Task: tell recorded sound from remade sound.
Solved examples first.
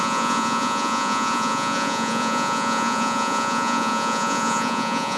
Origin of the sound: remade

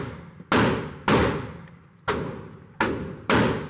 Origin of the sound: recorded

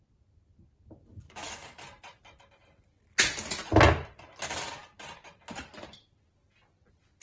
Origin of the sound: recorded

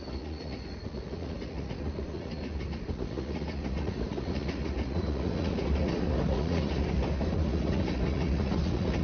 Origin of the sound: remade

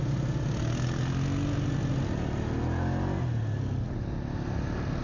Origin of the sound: recorded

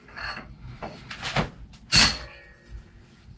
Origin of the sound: recorded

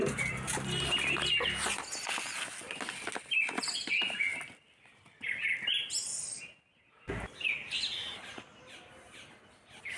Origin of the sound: recorded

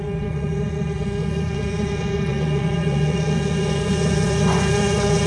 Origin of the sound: remade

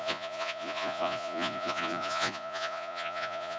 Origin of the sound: remade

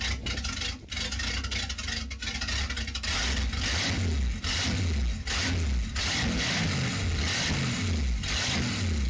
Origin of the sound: recorded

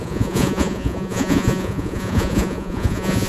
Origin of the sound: remade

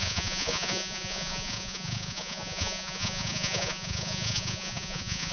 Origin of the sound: remade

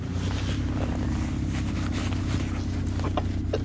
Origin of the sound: recorded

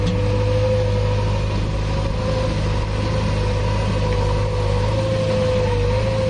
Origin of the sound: recorded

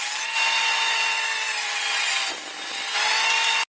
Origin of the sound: recorded